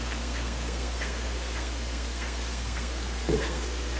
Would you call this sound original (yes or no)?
no